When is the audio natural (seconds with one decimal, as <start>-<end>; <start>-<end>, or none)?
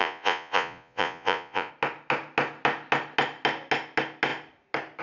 1.7-5.0